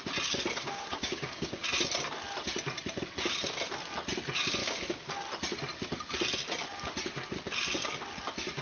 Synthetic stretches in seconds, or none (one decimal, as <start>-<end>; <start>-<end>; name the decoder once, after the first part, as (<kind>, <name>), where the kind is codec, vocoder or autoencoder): 0.6-1.6 (codec, DAC); 4.6-5.1